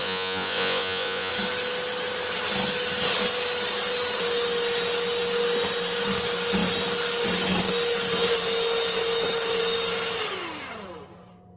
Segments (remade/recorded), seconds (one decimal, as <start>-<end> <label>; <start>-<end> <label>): 0.0-1.3 remade; 1.3-11.6 recorded